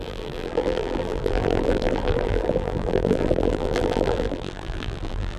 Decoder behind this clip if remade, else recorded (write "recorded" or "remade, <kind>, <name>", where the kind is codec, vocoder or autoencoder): remade, vocoder, BigVGAN v2